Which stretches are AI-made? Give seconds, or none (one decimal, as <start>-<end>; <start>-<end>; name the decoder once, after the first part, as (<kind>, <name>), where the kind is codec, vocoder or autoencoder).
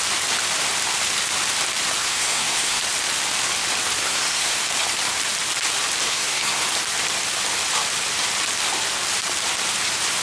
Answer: 2.0-2.8 (codec, SNAC); 4.0-4.6; 6.0-6.6